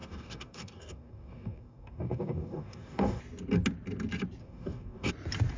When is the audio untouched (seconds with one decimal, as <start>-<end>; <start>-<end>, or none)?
3.2-4.4; 5.1-5.6